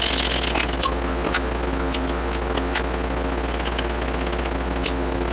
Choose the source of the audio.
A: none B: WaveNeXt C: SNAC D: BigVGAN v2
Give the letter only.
A